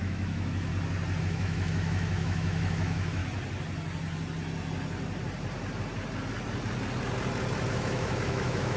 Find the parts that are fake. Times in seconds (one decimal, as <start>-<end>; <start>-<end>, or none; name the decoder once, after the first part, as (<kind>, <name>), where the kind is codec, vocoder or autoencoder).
0.0-0.7 (autoencoder, DAC-VAE); 1.2-3.2; 7.7-8.8